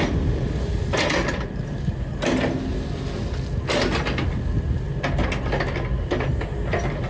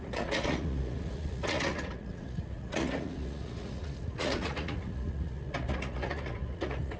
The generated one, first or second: second